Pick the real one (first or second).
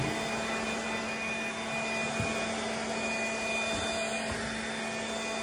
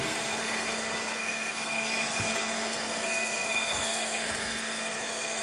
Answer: first